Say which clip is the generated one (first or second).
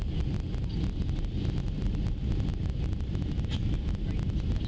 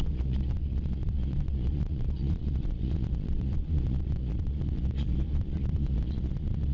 second